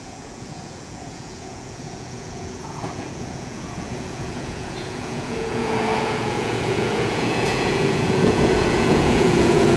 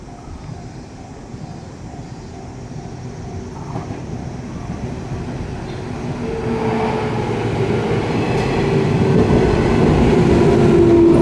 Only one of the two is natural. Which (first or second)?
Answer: second